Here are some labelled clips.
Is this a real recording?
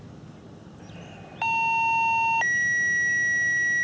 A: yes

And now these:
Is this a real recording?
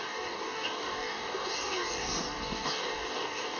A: no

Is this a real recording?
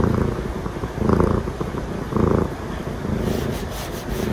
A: yes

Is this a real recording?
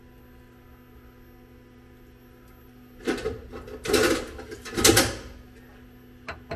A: yes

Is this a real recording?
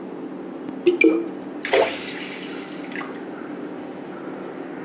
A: yes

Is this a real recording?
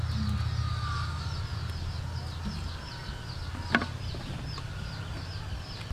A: yes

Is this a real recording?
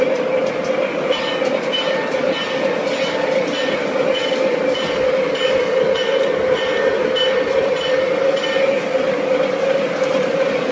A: yes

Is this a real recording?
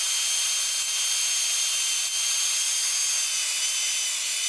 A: yes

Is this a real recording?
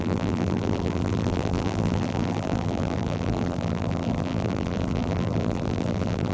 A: no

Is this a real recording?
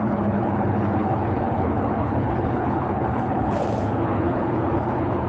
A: no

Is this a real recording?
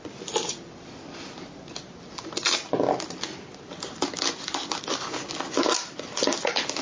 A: yes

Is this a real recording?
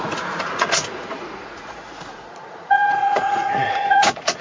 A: no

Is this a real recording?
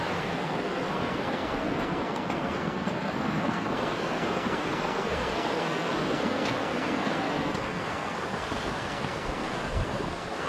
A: no